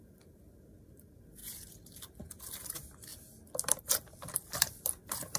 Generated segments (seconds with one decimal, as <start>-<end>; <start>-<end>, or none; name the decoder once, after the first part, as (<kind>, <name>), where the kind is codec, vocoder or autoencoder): 0.0-3.1 (vocoder, BigVGAN v2); 3.8-5.4